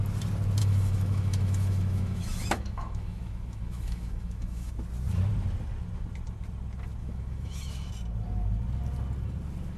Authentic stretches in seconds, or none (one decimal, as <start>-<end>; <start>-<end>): 0.0-0.6; 4.7-7.0; 7.9-9.8